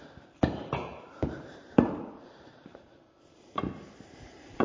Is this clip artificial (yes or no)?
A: yes